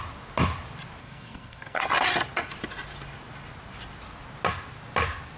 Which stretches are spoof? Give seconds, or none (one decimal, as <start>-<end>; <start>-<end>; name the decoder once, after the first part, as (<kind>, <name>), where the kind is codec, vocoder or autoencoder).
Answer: 1.0-1.8 (codec, SNAC)